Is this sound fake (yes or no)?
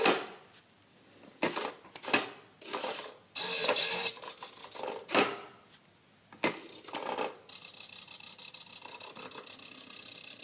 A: no